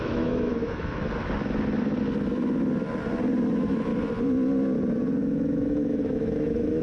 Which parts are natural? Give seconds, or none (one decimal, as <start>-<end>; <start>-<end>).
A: 1.0-3.5; 3.9-5.2

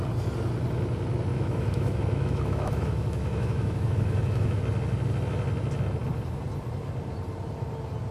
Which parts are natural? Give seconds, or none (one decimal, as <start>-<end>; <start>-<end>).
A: 0.0-1.3; 4.6-8.1

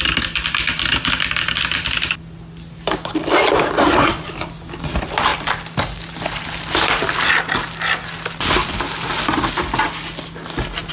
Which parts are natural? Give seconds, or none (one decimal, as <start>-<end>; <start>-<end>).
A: 0.0-10.9

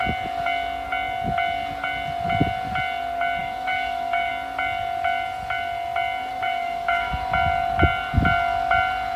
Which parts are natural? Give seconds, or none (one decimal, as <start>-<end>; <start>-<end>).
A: 0.0-3.4; 4.3-6.3; 7.1-9.2

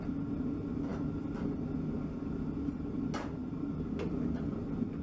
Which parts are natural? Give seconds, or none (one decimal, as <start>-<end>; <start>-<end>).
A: 0.0-5.0

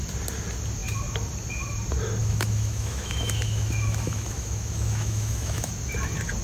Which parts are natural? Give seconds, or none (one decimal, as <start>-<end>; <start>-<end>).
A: 0.0-2.2; 5.7-6.4

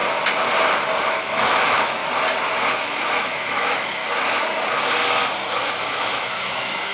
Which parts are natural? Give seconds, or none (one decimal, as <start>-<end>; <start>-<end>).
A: 0.0-1.0; 2.0-2.7; 4.0-5.5

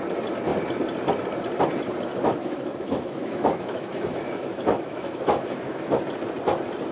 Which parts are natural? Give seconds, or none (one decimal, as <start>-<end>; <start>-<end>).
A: 0.0-2.1; 6.0-6.9